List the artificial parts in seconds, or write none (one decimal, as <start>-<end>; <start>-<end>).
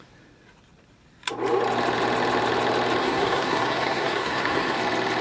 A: 3.0-4.8